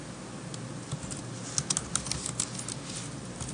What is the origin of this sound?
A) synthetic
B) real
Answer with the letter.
B